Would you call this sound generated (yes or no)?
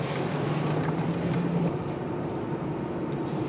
no